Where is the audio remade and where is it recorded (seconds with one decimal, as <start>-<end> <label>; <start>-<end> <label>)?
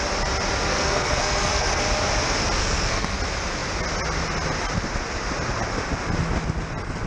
0.0-0.7 recorded; 0.7-1.8 remade; 1.8-2.6 recorded; 2.6-3.2 remade; 3.2-7.1 recorded